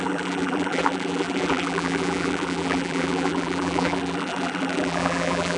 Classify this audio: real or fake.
fake